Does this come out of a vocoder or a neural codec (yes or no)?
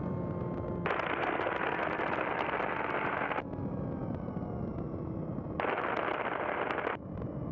no